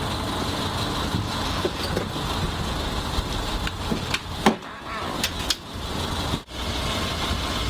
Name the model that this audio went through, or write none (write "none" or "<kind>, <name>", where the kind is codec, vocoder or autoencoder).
none